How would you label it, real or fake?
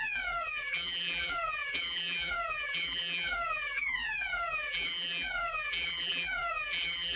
fake